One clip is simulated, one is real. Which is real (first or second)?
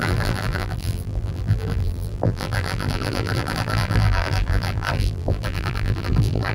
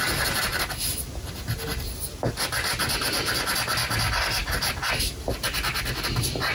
second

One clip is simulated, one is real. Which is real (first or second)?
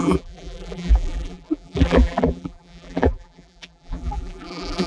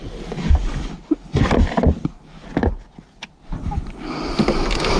second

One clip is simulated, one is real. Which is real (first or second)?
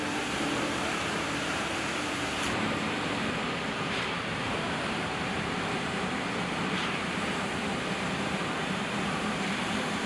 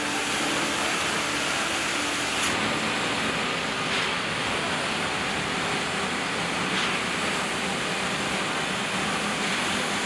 second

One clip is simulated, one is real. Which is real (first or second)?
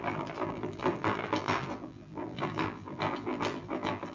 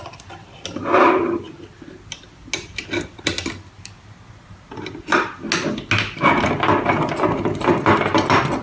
second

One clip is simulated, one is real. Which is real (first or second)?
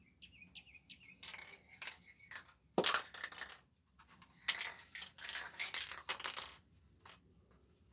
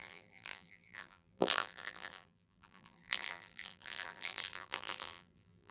first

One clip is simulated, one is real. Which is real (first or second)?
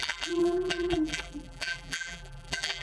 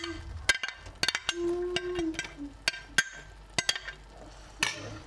second